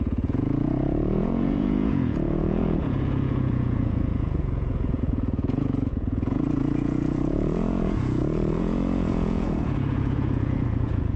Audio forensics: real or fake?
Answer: fake